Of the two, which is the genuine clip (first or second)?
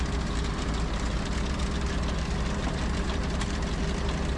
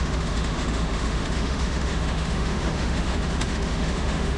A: first